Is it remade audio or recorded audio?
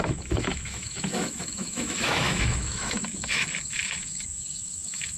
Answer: remade